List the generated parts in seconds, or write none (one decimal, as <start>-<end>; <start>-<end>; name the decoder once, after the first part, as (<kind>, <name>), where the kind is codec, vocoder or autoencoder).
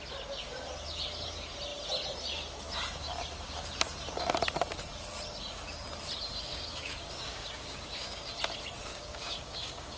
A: 6.5-8.3 (codec, DAC); 8.9-10.0